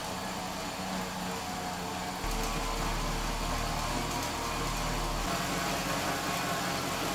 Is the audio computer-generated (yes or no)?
no